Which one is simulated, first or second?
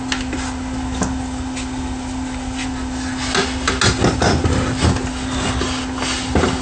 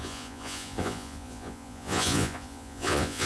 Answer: second